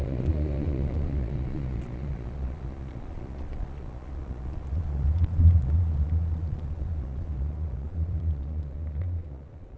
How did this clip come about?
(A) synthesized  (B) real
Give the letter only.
A